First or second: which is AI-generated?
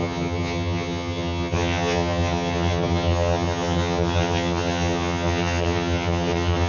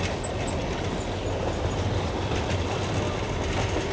first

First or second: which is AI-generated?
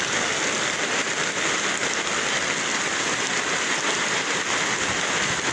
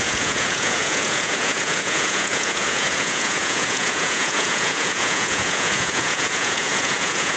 second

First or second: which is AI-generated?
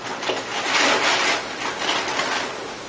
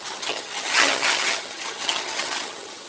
second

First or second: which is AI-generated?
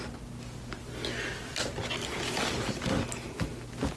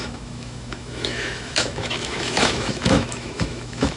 second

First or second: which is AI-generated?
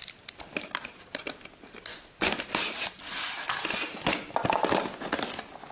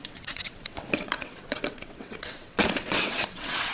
second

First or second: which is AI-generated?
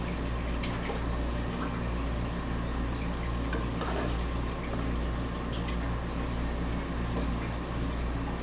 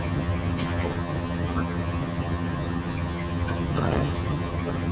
second